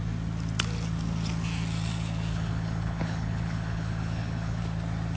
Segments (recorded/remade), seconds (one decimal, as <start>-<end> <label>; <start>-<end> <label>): 0.0-2.3 recorded; 2.3-4.6 remade; 4.6-5.2 recorded